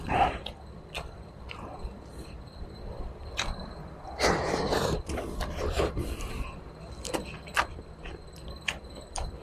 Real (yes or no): no